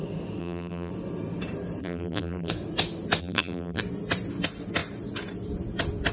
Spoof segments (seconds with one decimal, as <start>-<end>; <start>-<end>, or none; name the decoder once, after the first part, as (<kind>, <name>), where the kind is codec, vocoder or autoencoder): 0.4-0.9 (vocoder, BigVGAN v2); 1.8-2.5; 3.2-3.8